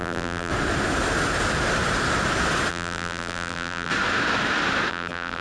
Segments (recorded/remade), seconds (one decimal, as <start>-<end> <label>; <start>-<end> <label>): 0.0-0.5 remade; 0.5-2.7 recorded; 2.7-3.9 remade; 3.9-4.9 recorded; 4.9-5.4 remade